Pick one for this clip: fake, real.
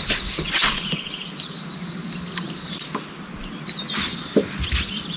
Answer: real